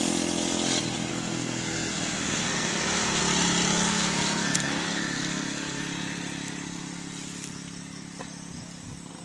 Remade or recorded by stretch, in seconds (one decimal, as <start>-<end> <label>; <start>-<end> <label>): 0.0-1.1 recorded; 1.1-3.2 remade; 3.2-3.7 recorded; 3.7-5.8 remade; 5.8-9.2 recorded